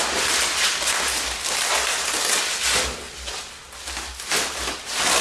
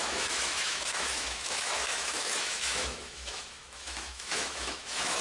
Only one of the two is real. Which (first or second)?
first